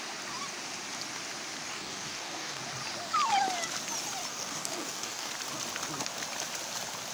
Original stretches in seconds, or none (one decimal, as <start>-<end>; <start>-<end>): 0.0-1.7; 2.6-4.3; 5.3-7.1